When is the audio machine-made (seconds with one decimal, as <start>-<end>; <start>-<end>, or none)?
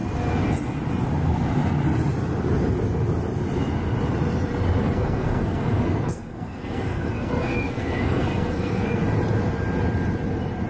4.8-9.0